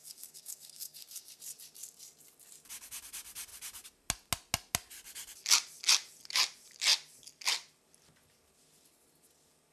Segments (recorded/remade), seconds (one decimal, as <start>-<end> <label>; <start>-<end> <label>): 0.0-1.4 remade; 1.4-9.7 recorded